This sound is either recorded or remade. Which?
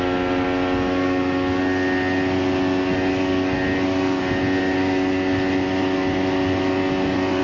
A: recorded